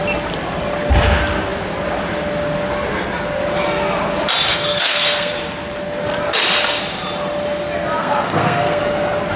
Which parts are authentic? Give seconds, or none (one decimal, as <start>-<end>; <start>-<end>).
0.0-4.5; 5.3-8.0; 8.8-9.4